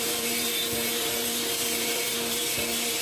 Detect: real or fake fake